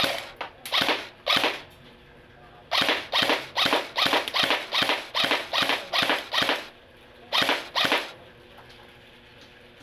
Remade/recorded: recorded